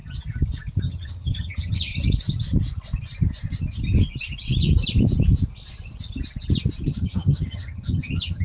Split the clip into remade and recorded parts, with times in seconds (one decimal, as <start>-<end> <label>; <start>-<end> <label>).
0.0-0.8 recorded; 0.8-1.9 remade; 1.9-6.9 recorded; 6.9-8.4 remade